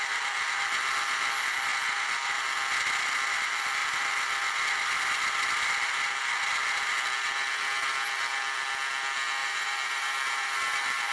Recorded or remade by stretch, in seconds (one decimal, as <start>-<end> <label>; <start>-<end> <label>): 0.0-9.4 recorded; 9.4-11.1 remade